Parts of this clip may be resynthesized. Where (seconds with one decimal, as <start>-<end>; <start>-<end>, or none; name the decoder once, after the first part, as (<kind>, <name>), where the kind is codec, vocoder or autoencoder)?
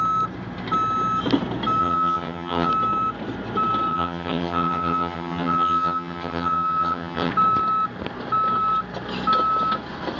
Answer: 1.8-2.7 (vocoder, HiFi-GAN); 3.9-7.3